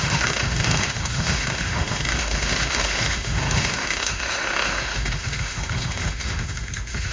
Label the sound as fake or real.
fake